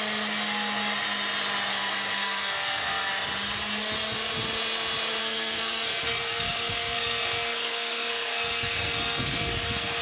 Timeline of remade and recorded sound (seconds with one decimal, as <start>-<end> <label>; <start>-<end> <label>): 0.0-1.7 recorded; 1.7-3.1 remade; 3.1-5.2 recorded; 5.2-10.0 remade